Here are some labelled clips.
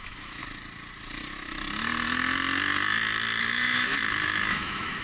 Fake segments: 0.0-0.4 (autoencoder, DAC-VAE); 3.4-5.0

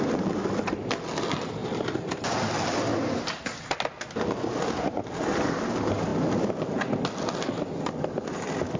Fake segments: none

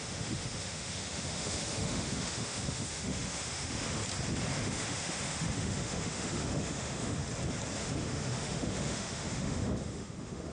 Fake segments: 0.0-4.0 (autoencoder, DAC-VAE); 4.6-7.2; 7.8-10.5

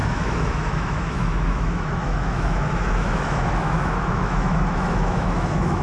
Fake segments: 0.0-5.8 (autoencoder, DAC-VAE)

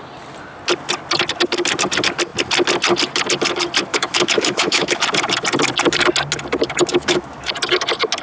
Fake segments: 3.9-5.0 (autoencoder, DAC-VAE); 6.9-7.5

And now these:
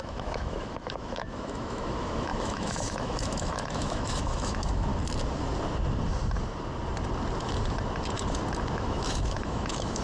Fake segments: 0.0-4.9 (autoencoder, DAC-VAE); 8.7-10.0